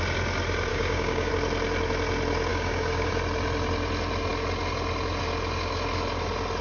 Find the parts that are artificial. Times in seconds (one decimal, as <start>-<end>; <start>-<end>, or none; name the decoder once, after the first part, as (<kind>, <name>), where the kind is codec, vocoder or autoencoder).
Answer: 0.7-1.3 (codec, DAC); 2.5-3.1